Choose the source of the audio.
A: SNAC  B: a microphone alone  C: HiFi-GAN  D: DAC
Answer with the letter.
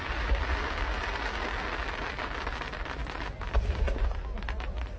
B